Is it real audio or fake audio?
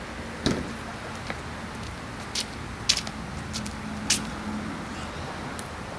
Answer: real